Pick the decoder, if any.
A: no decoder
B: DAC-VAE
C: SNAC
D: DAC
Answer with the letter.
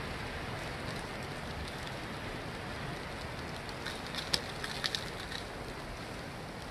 A